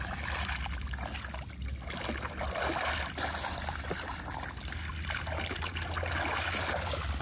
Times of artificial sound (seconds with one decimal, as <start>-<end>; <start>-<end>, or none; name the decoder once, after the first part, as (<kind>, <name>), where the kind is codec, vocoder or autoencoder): none